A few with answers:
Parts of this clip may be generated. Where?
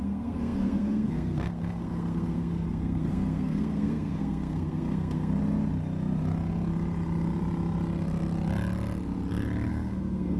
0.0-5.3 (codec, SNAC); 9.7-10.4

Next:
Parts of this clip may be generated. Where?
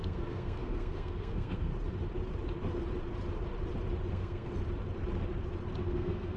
0.0-1.7 (codec, SNAC); 4.1-4.5; 5.8-6.4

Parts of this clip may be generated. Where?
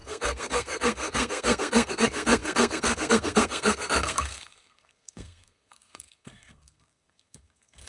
0.0-7.9 (codec, SNAC)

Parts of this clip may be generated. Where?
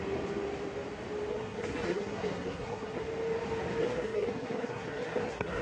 1.3-3.0 (codec, SNAC); 3.8-5.6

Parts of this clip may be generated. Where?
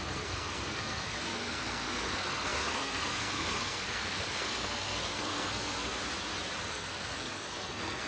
0.0-6.0 (codec, SNAC); 6.7-8.1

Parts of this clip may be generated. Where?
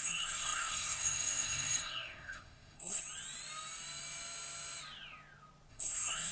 0.0-3.0 (codec, SNAC); 5.7-6.3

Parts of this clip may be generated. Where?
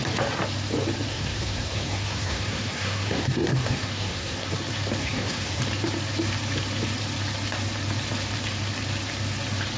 1.1-4.5 (codec, SNAC); 5.0-5.6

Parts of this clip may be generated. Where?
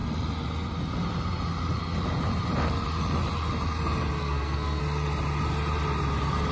4.2-4.8 (codec, SNAC)